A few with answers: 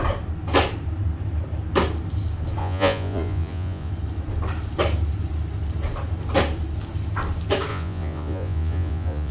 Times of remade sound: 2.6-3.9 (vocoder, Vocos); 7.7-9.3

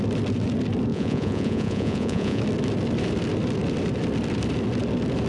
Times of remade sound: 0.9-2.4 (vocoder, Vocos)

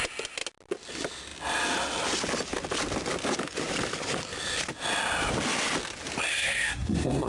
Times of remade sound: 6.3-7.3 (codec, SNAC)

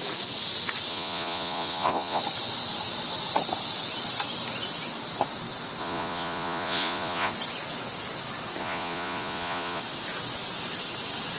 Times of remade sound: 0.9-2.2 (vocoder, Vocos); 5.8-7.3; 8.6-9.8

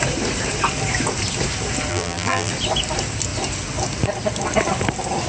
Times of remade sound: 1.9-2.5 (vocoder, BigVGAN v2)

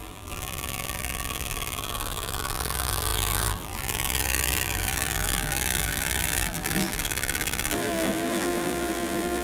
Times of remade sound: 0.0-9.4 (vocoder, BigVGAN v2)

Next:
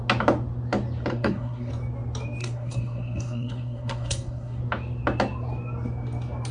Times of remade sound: 1.1-1.7 (codec, SNAC); 2.4-4.6